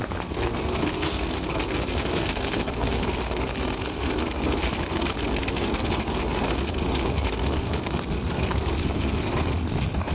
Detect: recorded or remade remade